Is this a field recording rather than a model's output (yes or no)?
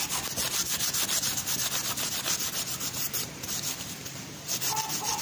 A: yes